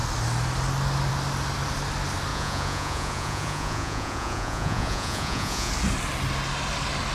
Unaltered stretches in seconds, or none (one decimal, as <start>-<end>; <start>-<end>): 0.0-2.3; 5.7-7.1